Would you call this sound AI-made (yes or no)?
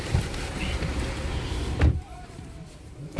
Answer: yes